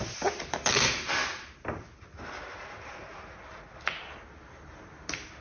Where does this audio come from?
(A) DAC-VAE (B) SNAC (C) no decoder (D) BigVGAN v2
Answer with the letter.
C